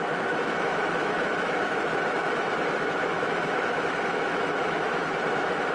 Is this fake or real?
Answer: fake